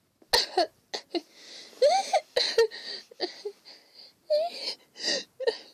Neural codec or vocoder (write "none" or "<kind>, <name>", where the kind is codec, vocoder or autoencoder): none